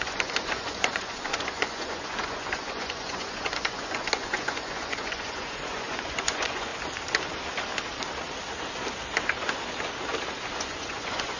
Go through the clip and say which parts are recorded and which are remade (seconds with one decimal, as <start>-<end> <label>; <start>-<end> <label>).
0.0-6.7 remade; 6.7-10.6 recorded; 10.6-11.4 remade